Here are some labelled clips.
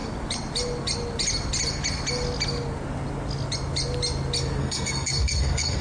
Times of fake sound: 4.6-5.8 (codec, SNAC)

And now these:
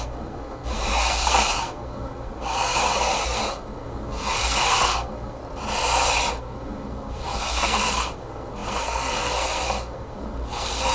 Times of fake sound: 0.0-5.4 (codec, SNAC); 6.3-10.9

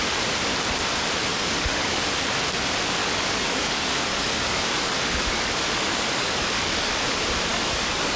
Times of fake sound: 1.3-2.0 (codec, DAC); 3.0-6.9; 7.5-8.2

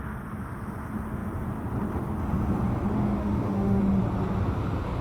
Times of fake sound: 3.2-3.8 (autoencoder, DAC-VAE)

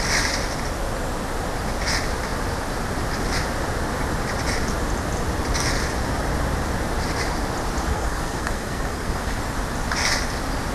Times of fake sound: 7.9-9.4 (codec, SNAC)

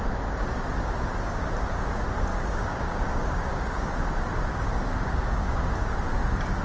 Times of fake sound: 2.3-3.9 (codec, DAC); 4.5-5.7